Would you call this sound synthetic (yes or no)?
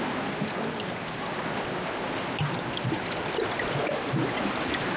no